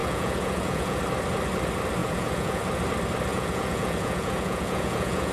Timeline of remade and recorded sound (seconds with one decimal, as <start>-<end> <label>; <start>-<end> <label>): 0.0-1.0 remade; 1.0-2.0 recorded; 2.0-2.6 remade; 2.6-3.3 recorded; 3.3-5.3 remade

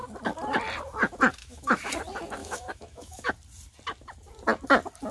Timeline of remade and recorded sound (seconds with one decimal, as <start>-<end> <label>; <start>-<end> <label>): 0.0-1.4 recorded; 1.4-1.9 remade; 1.9-2.4 recorded; 2.4-3.3 remade; 3.3-5.1 recorded

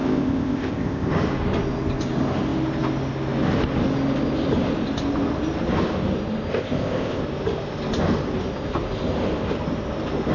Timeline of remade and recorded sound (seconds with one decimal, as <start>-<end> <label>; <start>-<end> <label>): 0.0-1.1 remade; 1.1-6.5 recorded; 6.5-7.2 remade; 7.2-10.3 recorded

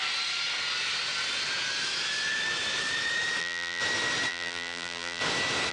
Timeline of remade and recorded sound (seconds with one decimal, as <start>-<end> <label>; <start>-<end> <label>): 0.0-3.4 recorded; 3.4-3.8 remade; 3.8-4.3 recorded; 4.3-5.2 remade; 5.2-5.7 recorded

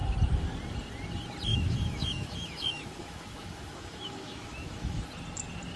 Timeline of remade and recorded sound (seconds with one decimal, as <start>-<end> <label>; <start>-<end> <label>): 0.0-1.5 recorded; 1.5-5.0 remade; 5.0-5.8 recorded

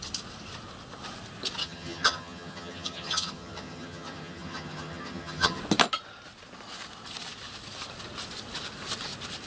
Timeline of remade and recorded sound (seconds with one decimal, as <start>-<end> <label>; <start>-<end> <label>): 0.0-1.6 recorded; 1.6-5.6 remade; 5.6-9.5 recorded